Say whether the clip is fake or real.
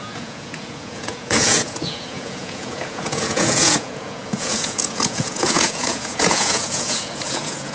fake